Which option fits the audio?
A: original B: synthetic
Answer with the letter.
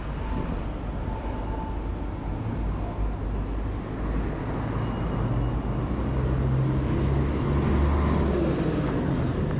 A